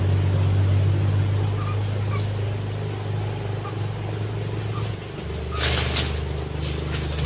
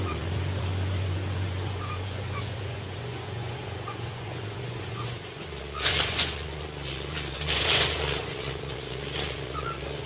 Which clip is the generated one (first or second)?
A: second